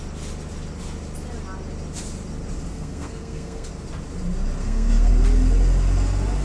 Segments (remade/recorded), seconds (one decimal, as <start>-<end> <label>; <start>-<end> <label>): 0.0-2.7 recorded; 2.7-3.7 remade; 3.7-4.6 recorded; 4.6-5.1 remade; 5.1-6.4 recorded